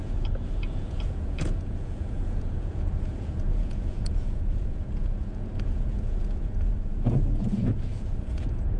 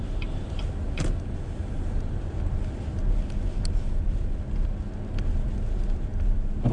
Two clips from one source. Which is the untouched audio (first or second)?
second